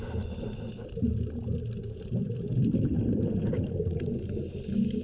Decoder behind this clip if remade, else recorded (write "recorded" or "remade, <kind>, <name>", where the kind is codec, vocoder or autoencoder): recorded